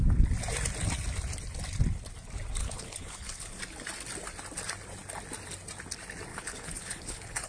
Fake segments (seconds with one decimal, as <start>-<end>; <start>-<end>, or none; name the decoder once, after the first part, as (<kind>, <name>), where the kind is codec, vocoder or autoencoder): 2.6-3.6 (codec, HILCodec); 6.3-7.5

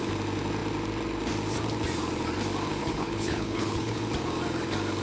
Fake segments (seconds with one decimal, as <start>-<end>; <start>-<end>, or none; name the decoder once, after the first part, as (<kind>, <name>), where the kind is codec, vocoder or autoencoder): 2.8-4.0 (codec, HILCodec)

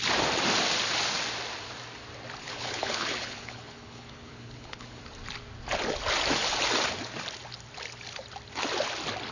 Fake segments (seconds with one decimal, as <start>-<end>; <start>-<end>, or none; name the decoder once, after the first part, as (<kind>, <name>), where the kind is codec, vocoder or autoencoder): 2.4-5.0 (codec, HILCodec)

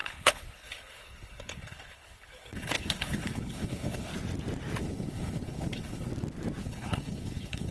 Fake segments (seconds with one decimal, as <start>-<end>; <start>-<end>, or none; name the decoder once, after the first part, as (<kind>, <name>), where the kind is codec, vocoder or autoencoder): 0.0-4.1 (codec, HILCodec); 4.8-6.1; 6.6-7.7

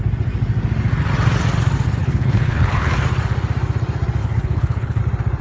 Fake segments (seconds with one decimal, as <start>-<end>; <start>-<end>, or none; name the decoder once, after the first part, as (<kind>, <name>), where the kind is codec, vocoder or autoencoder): 2.0-2.9 (codec, HILCodec); 4.2-5.0

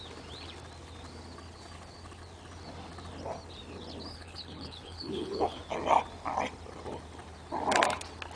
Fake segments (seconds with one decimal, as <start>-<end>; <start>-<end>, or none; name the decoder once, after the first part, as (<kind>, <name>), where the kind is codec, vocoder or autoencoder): 4.1-5.6 (codec, HILCodec)

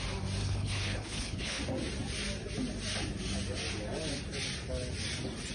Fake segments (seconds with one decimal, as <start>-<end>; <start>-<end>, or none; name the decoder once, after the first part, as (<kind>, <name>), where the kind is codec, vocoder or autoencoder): 0.4-1.6 (codec, HILCodec)

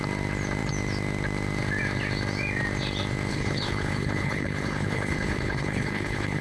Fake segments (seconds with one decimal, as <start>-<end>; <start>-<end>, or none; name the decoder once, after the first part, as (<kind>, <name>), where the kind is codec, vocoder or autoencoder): 3.3-6.4 (codec, HILCodec)